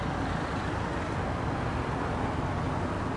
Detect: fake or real real